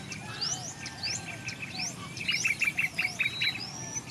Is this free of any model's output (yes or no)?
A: yes